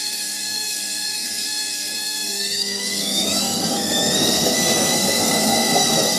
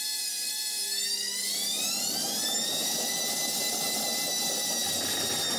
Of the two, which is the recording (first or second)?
second